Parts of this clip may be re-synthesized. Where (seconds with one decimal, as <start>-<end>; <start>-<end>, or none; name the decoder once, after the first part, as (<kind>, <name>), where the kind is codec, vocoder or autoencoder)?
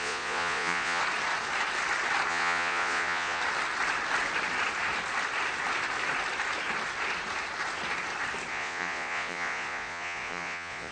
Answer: 0.0-1.0 (vocoder, Vocos); 2.3-3.4; 8.5-10.9